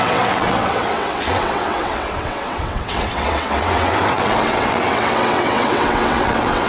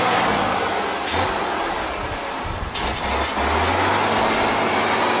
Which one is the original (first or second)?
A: second